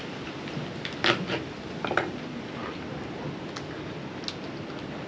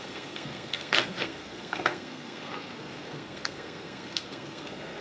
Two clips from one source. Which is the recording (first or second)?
first